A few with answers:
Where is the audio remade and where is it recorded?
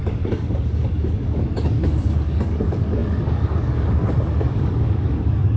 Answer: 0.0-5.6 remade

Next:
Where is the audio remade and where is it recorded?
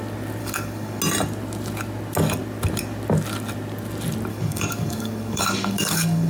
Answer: 0.0-0.4 recorded; 0.4-1.0 remade; 1.0-4.3 recorded; 4.3-6.3 remade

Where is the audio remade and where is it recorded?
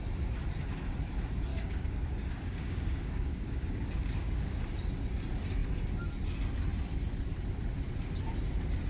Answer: 0.0-1.5 recorded; 1.5-4.6 remade; 4.6-8.9 recorded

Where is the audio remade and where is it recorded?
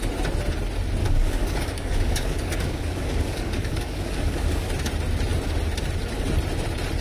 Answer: 0.0-1.0 recorded; 1.0-4.7 remade; 4.7-7.0 recorded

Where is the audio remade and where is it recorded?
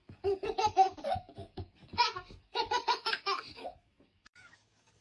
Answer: 0.0-5.0 remade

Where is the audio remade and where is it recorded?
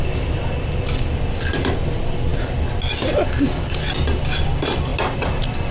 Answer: 0.0-5.7 recorded